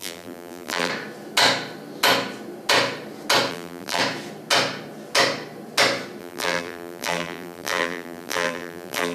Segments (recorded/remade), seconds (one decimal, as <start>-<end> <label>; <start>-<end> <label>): 0.0-0.9 remade; 0.9-3.5 recorded; 3.5-4.0 remade; 4.0-6.2 recorded; 6.2-9.1 remade